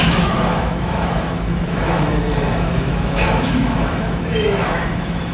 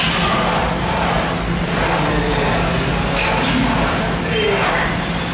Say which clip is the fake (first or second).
first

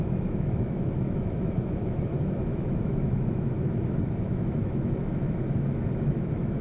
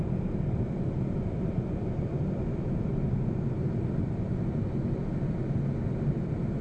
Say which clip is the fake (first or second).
first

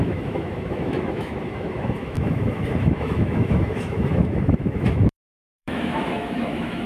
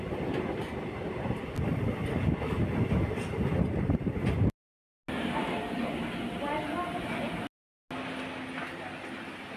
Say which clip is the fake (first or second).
first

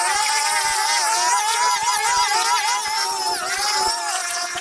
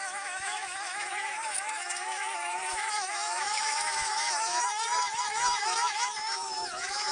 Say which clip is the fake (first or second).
second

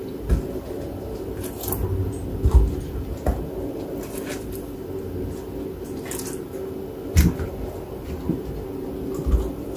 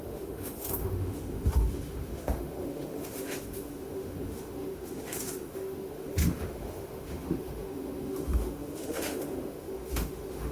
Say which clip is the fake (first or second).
second